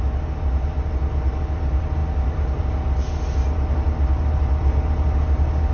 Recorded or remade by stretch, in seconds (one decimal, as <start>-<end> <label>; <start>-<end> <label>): 0.0-5.7 recorded